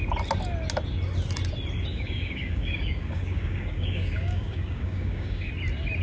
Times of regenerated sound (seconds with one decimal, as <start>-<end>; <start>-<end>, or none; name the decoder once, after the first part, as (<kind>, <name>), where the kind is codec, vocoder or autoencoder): 1.9-5.5 (codec, DAC)